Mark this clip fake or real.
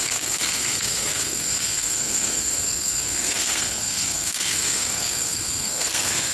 fake